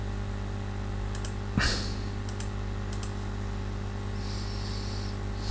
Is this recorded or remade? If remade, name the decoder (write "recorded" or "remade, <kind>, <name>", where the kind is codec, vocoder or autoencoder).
recorded